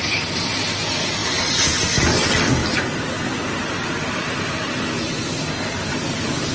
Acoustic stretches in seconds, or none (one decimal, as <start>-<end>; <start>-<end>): 0.0-6.5